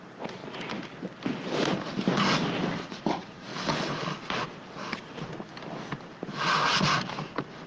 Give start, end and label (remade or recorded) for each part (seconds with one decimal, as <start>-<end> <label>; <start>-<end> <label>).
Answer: 0.0-0.4 remade; 0.4-2.7 recorded; 2.7-3.5 remade; 3.5-6.3 recorded; 6.3-7.7 remade